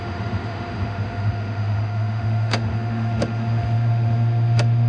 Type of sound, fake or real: fake